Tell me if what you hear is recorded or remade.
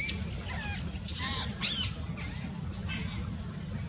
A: recorded